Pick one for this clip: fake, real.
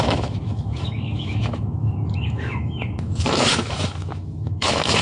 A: fake